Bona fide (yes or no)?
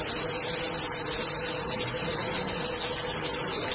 yes